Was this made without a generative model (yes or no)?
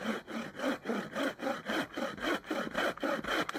yes